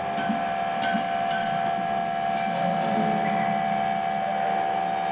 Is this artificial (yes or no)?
no